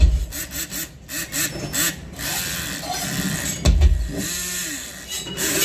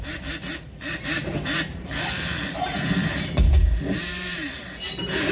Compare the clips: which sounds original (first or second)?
first